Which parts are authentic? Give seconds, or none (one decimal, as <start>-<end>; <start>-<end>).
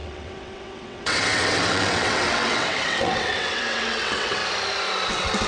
4.4-5.1